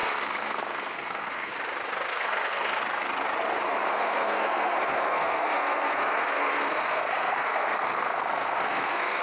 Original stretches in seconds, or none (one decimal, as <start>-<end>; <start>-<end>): 1.5-2.1; 2.8-3.9